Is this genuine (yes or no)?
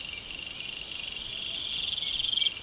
yes